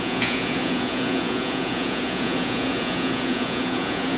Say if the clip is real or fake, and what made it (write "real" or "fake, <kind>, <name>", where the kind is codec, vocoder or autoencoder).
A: fake, vocoder, Vocos